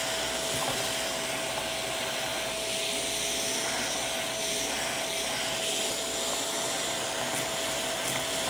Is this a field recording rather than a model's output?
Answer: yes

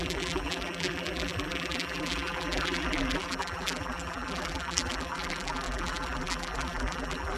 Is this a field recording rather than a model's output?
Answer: no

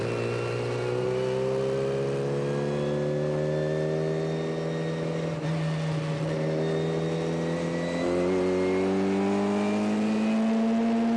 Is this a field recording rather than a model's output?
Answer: yes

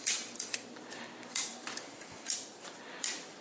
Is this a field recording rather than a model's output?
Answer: no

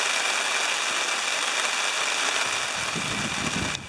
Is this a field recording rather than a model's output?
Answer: yes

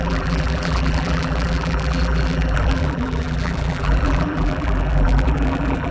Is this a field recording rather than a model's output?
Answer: no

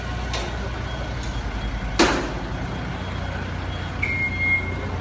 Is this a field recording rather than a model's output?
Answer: yes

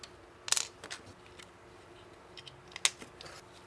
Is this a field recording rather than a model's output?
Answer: yes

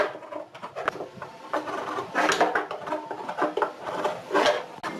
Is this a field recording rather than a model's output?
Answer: yes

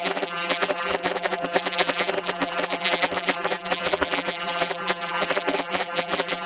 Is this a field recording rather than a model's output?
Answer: no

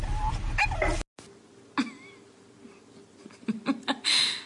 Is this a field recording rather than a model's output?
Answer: yes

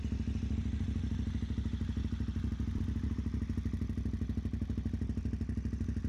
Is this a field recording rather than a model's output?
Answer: yes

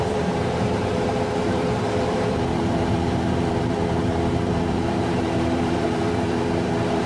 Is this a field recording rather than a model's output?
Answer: no